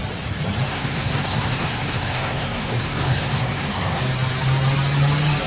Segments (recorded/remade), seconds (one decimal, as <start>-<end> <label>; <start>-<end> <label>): 0.0-0.7 recorded; 0.7-4.0 remade; 4.0-5.5 recorded